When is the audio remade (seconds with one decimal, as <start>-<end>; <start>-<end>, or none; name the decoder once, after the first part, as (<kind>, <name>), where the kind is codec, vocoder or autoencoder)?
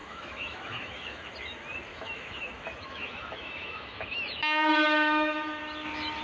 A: 0.0-1.3 (autoencoder, DAC-VAE); 1.9-5.6